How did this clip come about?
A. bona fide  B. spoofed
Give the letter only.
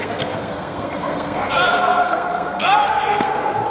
B